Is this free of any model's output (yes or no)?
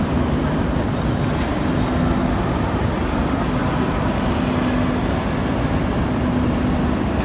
yes